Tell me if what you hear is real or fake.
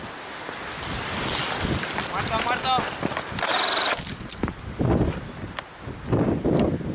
real